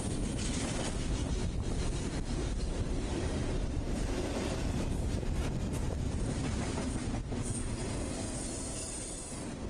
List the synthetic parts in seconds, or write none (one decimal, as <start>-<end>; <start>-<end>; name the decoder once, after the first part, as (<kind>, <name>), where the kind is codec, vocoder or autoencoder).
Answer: 0.0-7.0 (vocoder, BigVGAN v2); 8.6-9.7